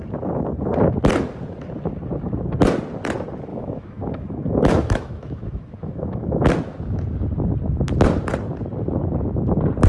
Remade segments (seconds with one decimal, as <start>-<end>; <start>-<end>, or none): 3.5-6.5